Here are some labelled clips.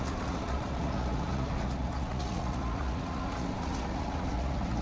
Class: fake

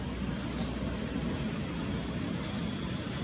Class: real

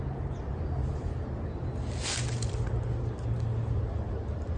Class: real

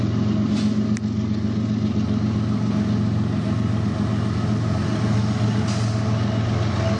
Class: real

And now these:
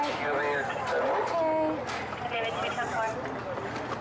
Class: real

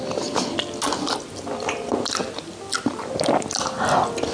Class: real